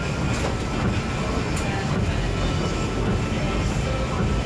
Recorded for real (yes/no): yes